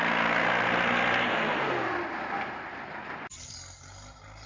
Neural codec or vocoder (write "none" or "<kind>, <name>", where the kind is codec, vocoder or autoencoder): none